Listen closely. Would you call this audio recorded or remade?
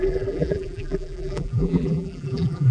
remade